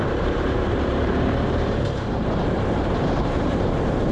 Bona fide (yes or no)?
no